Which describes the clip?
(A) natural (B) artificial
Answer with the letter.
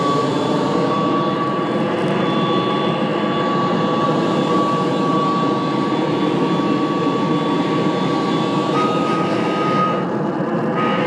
A